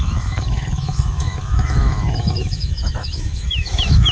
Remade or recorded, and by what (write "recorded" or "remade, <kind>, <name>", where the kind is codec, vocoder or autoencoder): remade, autoencoder, DAC-VAE